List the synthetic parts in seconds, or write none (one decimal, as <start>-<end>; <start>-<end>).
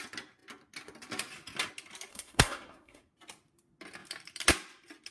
2.1-3.1